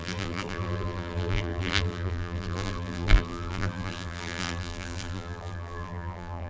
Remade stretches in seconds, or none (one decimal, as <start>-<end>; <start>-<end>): 0.0-6.5